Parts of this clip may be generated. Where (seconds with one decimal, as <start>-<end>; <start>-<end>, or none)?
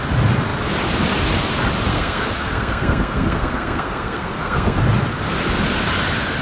1.9-4.8